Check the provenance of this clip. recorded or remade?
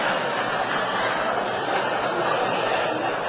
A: recorded